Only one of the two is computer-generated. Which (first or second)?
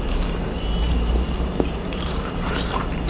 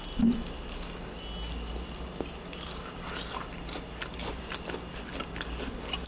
first